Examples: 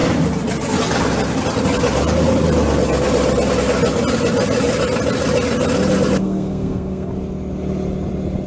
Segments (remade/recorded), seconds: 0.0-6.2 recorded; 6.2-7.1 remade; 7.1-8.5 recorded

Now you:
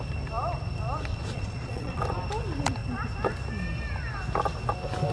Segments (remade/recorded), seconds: 0.0-1.1 recorded; 1.1-2.0 remade; 2.0-5.1 recorded

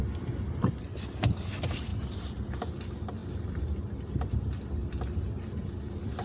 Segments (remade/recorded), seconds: 0.0-6.2 recorded

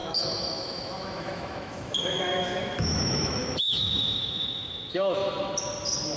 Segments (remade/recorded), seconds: 0.0-5.2 remade; 5.2-6.2 recorded